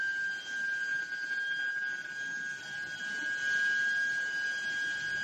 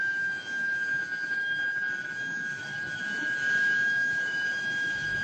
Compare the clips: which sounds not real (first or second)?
second